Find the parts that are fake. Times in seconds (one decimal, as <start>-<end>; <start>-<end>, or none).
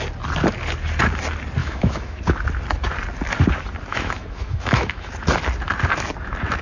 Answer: 1.6-2.2; 3.9-5.1